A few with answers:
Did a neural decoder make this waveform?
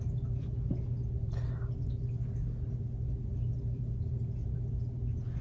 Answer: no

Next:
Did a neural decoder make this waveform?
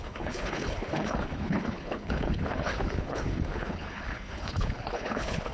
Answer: yes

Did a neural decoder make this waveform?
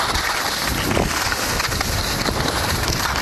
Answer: no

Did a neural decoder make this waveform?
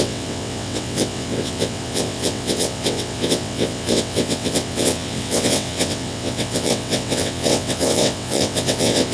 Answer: yes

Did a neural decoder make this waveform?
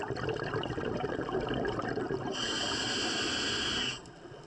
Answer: no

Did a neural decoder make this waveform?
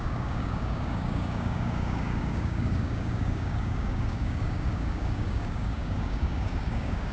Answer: yes